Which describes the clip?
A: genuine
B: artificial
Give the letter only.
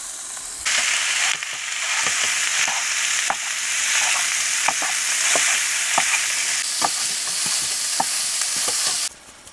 A